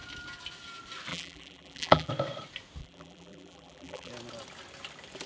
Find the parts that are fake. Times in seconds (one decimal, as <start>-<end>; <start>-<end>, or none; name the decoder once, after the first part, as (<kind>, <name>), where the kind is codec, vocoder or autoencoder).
1.1-2.1 (vocoder, BigVGAN v2); 2.8-4.1